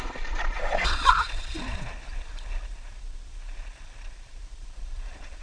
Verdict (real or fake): fake